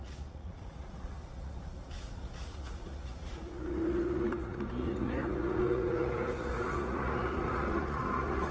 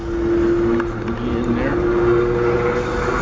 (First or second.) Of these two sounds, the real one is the second